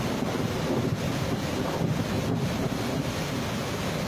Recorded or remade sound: recorded